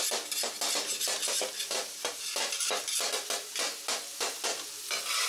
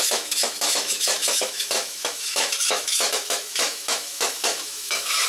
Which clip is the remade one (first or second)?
second